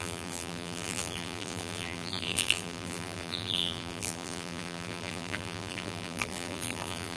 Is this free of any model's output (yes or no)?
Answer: no